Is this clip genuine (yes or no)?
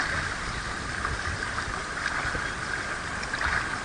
yes